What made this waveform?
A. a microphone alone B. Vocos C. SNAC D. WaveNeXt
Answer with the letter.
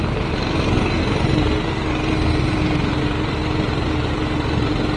A